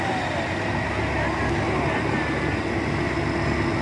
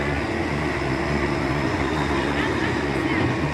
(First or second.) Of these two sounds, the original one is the first